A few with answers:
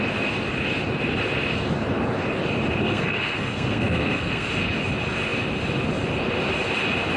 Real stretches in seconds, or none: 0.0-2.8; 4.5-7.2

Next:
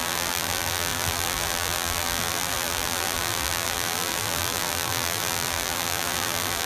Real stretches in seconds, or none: none

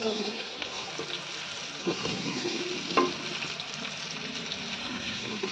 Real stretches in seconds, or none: 0.9-1.8; 2.6-4.8